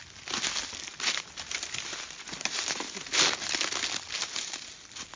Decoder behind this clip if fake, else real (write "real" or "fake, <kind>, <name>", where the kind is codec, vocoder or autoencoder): real